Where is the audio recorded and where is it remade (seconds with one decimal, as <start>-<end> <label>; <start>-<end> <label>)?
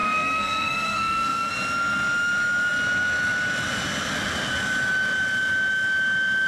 0.0-1.5 remade; 1.5-6.5 recorded